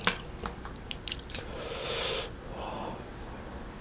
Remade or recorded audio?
recorded